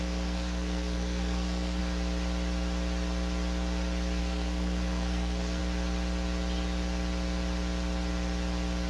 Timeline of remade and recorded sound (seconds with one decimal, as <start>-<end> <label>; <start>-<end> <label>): 0.0-1.8 remade; 1.8-4.2 recorded; 4.2-5.6 remade; 5.6-8.9 recorded